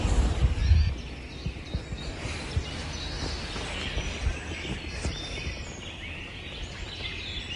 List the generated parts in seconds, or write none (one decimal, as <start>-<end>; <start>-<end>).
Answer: none